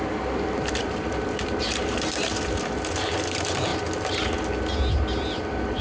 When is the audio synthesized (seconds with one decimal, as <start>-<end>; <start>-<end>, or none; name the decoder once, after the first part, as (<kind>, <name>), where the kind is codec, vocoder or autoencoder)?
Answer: 0.0-3.7 (vocoder, BigVGAN v2); 4.9-5.8